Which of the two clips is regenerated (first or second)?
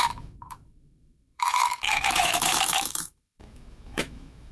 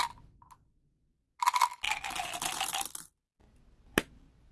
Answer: first